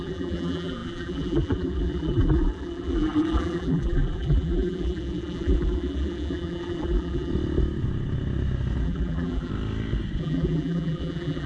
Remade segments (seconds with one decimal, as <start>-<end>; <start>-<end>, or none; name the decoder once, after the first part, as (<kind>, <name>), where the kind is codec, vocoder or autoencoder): 0.0-7.3 (vocoder, BigVGAN v2); 8.8-9.5; 10.2-11.5